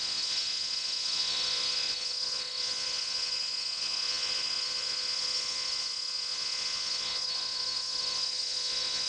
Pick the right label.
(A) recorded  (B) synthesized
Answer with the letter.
B